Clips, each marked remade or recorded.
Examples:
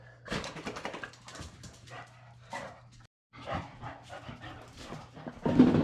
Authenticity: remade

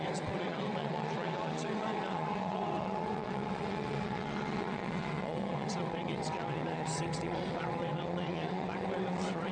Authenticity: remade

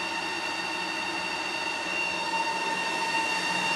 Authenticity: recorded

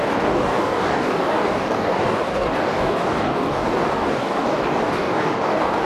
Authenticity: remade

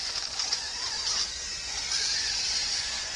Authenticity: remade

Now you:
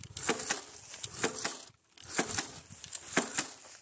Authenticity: recorded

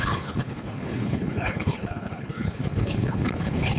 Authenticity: remade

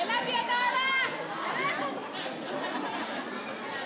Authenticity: recorded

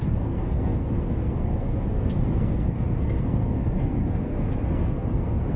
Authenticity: remade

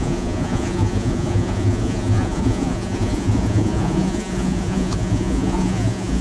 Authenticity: remade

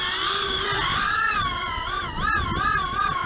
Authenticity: remade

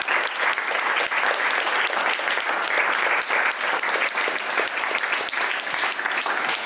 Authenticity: recorded